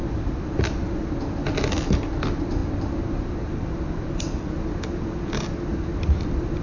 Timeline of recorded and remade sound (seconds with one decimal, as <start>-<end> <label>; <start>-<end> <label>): 0.0-6.6 recorded